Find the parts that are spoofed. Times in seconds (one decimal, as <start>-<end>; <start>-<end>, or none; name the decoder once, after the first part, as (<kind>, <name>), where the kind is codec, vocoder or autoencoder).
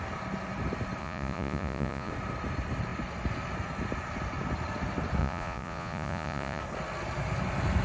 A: 1.0-2.1 (vocoder, Vocos); 5.2-6.6